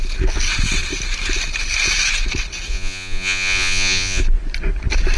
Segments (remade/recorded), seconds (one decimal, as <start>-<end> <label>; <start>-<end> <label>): 0.0-2.7 recorded; 2.7-4.2 remade; 4.2-5.2 recorded